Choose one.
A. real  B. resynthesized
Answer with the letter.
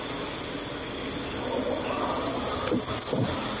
A